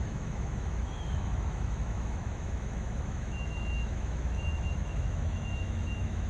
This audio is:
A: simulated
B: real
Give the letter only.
A